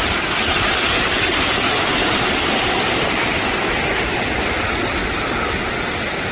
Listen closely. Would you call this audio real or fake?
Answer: real